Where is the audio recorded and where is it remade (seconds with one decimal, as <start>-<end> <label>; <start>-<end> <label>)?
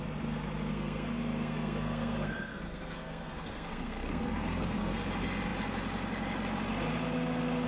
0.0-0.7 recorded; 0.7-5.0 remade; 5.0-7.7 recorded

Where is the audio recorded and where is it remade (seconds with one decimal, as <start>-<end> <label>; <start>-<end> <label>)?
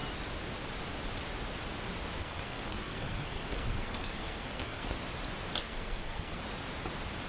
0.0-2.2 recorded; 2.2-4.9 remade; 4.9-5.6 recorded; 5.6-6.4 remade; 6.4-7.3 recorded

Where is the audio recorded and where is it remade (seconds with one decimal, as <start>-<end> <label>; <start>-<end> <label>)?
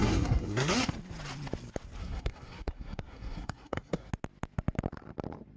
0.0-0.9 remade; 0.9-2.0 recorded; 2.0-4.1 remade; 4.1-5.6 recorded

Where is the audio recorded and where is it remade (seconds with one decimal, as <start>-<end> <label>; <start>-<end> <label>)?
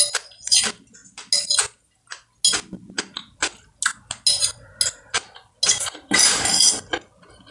0.0-7.5 recorded